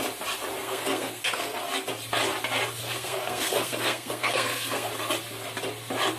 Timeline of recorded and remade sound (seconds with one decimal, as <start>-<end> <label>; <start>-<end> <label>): 0.0-0.6 recorded; 0.6-1.6 remade; 1.6-2.8 recorded; 2.8-4.9 remade; 4.9-6.2 recorded